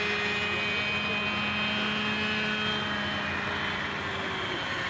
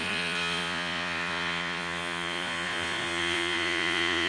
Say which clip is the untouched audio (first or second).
first